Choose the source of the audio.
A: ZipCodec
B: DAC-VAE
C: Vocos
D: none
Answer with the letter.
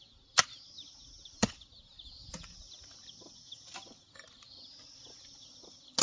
D